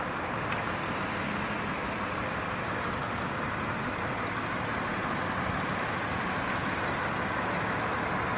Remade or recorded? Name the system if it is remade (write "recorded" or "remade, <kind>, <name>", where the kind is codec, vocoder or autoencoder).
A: recorded